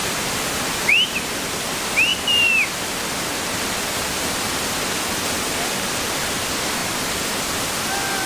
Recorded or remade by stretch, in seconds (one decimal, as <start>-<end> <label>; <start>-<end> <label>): 0.0-1.1 remade; 1.1-8.3 recorded